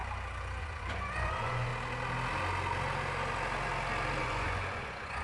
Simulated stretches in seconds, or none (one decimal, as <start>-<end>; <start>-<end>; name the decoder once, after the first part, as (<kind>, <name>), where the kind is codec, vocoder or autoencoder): 0.6-1.7 (vocoder, Vocos); 4.2-5.2